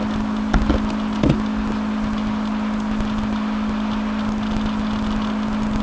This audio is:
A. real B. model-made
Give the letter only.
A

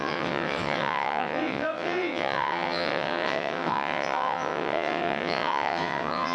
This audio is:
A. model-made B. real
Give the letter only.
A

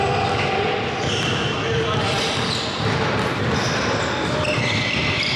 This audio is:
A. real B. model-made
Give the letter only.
A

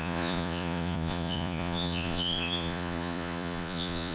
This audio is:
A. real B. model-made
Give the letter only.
B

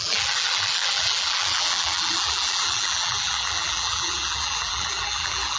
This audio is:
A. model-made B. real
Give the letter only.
A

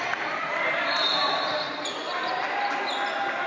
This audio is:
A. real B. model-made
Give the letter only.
A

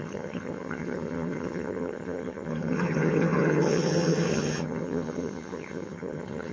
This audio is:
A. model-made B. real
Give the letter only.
A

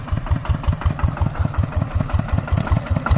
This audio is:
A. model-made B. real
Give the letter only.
A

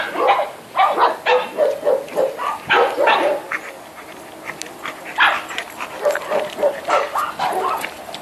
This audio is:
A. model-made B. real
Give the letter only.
B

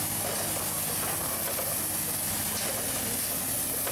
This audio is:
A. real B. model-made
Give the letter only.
A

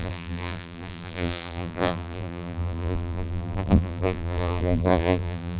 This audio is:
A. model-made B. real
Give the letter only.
A